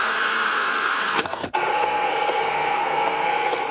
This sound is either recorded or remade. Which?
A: remade